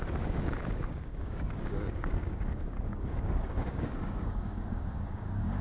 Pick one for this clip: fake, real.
fake